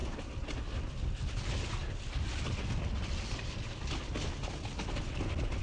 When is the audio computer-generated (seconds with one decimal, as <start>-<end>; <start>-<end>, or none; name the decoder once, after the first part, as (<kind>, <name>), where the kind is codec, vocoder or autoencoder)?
none